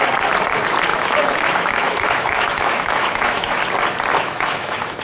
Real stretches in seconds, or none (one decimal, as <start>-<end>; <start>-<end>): 0.0-0.9; 3.5-4.1